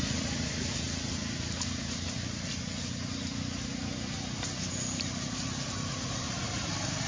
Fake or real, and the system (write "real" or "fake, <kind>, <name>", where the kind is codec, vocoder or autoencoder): real